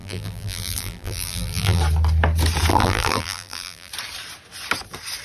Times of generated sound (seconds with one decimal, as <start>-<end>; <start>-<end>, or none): 0.0-1.8; 2.7-3.9